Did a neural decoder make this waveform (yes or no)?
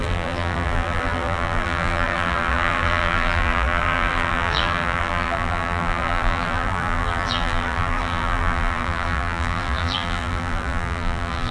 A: yes